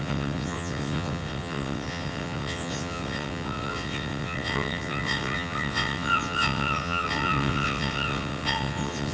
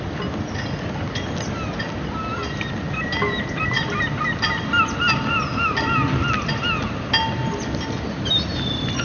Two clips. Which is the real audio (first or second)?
second